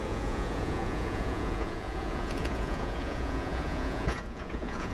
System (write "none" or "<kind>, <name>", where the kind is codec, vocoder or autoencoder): vocoder, Vocos